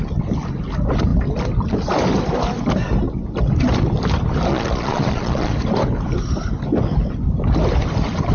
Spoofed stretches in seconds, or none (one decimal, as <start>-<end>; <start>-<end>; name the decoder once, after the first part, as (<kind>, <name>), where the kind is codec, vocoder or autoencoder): 4.5-5.5 (vocoder, Vocos)